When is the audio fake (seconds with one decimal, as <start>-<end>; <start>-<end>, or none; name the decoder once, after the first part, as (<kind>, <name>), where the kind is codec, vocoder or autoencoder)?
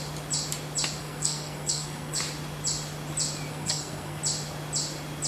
1.0-2.2 (codec, SNAC); 3.5-4.2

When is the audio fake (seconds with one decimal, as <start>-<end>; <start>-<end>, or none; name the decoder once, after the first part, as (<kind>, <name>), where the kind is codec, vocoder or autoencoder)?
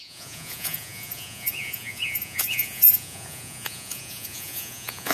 0.0-5.1 (vocoder, Vocos)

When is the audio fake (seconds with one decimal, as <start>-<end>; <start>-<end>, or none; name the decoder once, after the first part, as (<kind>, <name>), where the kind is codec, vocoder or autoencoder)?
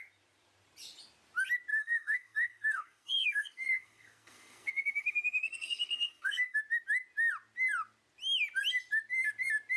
1.7-6.6 (codec, SNAC)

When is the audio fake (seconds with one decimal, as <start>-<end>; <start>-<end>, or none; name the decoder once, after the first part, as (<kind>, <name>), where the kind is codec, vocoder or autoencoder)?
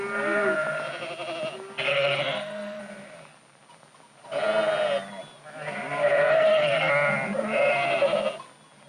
1.9-2.8 (codec, SNAC); 6.3-6.9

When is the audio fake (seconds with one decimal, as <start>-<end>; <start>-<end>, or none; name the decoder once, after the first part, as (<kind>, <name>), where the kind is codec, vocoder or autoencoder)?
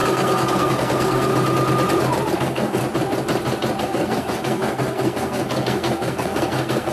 0.0-1.3 (codec, SNAC); 2.4-2.8; 3.8-6.9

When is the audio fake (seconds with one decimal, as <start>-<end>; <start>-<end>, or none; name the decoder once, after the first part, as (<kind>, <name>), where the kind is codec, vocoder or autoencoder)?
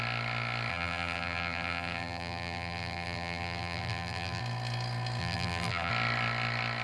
0.7-4.4 (vocoder, BigVGAN v2); 5.2-5.9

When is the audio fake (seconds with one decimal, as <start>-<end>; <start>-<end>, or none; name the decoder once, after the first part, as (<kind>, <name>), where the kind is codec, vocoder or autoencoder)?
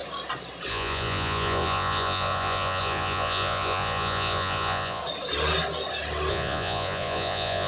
0.7-5.0 (vocoder, Vocos); 6.3-7.7